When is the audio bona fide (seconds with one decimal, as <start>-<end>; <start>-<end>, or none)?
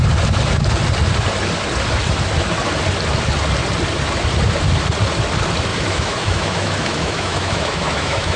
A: 0.0-5.7